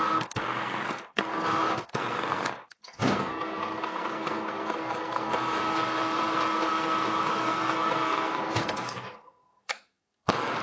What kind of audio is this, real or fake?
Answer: fake